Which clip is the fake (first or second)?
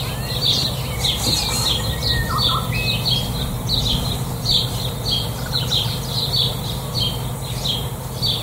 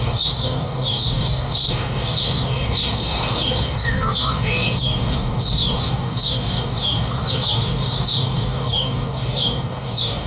second